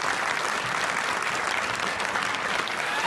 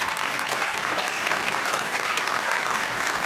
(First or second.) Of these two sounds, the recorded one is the first